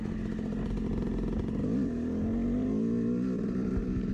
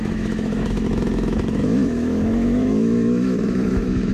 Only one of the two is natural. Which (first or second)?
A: first